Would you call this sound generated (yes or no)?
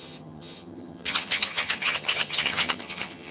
yes